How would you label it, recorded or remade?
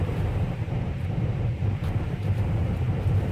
remade